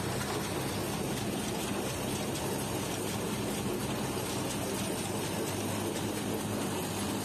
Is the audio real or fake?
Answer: real